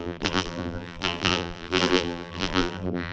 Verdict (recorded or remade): remade